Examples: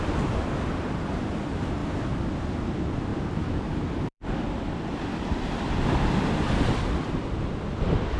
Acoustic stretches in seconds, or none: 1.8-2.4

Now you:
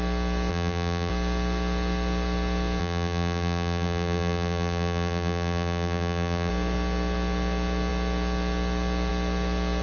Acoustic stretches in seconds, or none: 0.0-0.5; 1.1-2.8; 6.5-9.8